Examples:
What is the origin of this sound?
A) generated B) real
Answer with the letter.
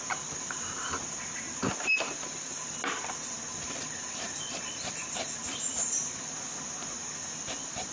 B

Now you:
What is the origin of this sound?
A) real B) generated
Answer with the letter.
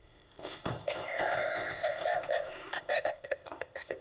B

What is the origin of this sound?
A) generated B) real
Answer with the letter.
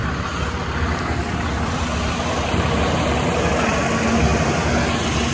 B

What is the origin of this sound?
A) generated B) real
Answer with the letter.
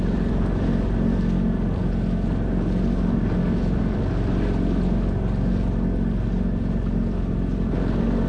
B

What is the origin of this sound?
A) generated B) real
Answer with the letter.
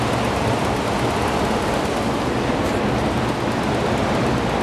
B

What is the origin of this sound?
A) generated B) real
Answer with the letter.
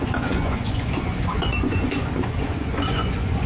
A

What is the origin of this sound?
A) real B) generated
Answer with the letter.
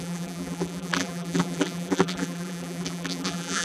B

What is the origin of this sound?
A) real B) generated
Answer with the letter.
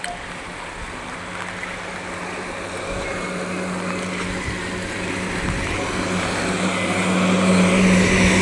A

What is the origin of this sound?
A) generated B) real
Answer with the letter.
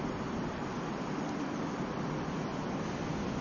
B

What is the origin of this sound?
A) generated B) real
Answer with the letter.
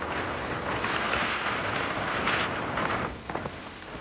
B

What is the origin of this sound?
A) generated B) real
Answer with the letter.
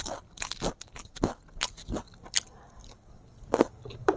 B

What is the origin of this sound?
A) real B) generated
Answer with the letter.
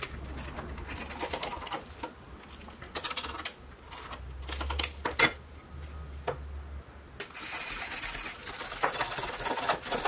A